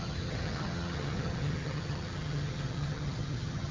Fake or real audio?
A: fake